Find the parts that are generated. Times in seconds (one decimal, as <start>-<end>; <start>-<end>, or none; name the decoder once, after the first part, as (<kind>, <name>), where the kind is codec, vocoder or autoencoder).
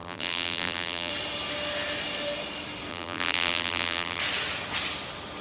0.0-1.1 (vocoder, BigVGAN v2); 2.9-4.2